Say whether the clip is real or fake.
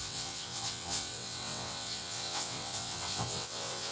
fake